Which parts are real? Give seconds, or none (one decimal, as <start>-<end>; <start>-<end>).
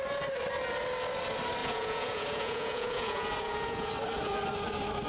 0.0-1.6; 3.9-5.1